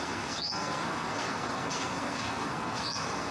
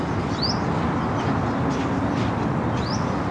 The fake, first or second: first